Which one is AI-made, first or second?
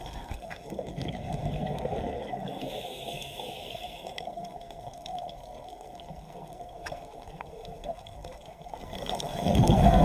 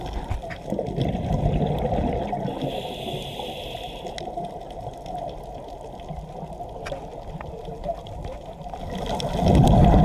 first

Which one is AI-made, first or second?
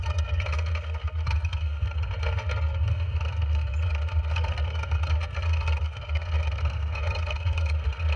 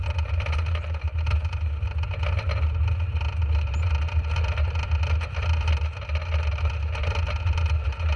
first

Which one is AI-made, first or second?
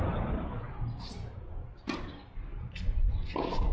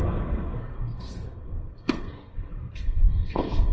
second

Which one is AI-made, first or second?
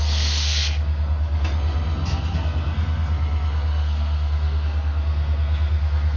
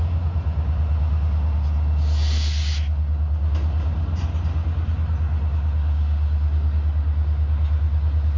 first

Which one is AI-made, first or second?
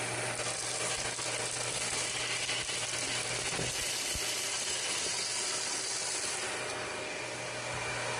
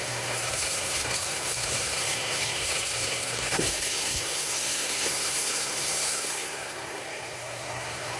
second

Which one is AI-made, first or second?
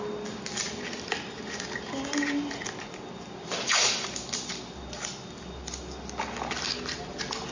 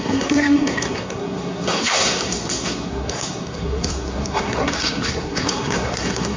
second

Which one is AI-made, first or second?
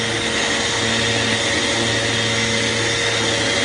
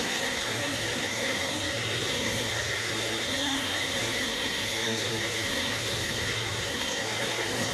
second